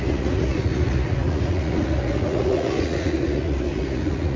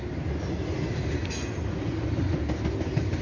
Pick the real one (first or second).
second